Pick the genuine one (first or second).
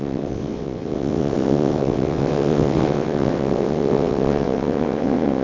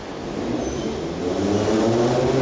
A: second